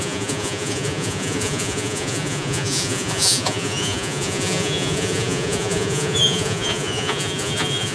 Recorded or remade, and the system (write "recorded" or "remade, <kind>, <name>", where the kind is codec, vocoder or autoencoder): remade, vocoder, Vocos